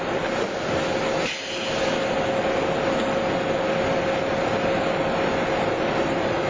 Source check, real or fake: real